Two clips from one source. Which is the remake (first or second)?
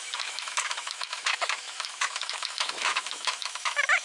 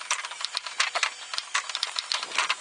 first